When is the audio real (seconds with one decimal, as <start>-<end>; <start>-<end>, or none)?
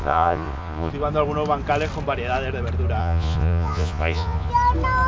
0.9-3.0; 4.5-5.1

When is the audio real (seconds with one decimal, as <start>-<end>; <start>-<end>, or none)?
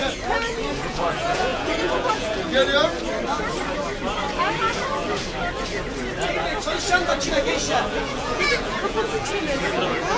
0.0-0.8; 2.6-7.3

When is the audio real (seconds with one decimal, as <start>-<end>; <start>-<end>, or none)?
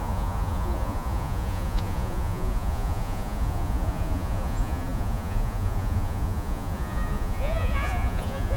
none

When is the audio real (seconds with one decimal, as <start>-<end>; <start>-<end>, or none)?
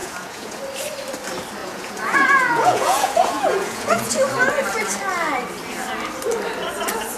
0.6-1.6; 4.1-7.2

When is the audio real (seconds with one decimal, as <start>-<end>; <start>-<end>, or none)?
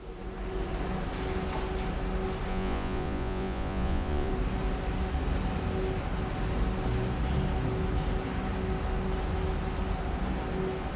0.0-2.5; 4.3-11.0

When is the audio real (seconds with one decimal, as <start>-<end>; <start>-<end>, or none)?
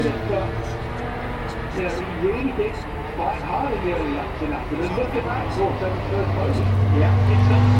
0.0-7.8